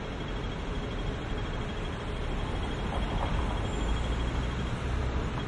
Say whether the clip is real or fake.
real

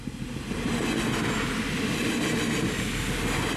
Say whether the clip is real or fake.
real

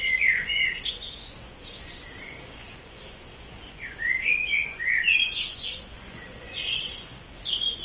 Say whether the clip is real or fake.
fake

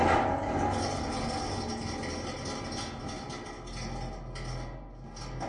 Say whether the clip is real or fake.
real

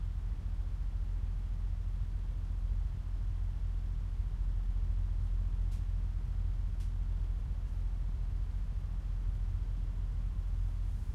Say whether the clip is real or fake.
real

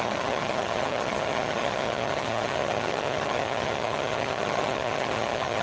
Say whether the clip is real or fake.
fake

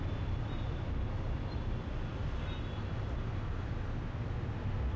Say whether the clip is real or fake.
real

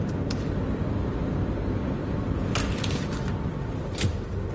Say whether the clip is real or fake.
real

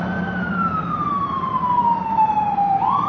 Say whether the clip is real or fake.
fake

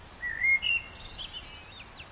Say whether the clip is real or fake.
real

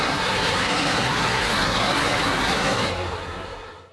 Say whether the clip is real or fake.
fake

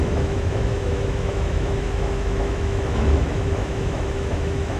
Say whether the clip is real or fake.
fake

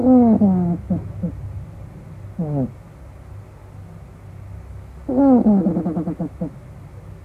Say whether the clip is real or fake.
real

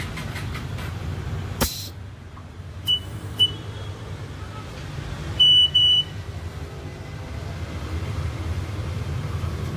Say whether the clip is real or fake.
fake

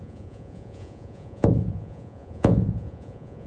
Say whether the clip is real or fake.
fake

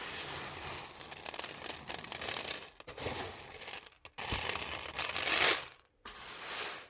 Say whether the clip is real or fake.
real